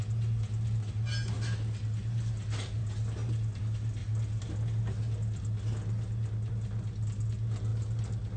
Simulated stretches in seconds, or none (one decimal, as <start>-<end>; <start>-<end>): none